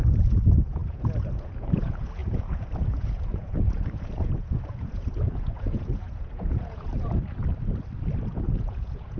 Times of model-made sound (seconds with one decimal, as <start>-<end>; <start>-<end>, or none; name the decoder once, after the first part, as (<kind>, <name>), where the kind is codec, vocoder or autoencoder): 0.0-6.9 (vocoder, Vocos); 8.3-9.2